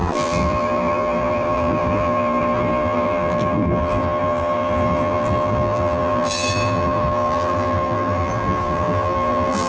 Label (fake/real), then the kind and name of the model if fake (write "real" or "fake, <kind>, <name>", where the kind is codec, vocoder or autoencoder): fake, vocoder, BigVGAN v2